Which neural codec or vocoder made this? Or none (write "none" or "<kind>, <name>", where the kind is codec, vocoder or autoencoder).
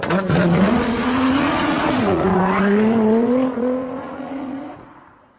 vocoder, Vocos